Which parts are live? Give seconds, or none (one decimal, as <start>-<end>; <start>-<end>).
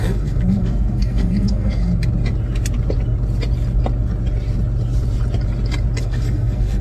1.9-6.0